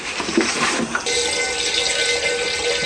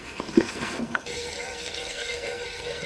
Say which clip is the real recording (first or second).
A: first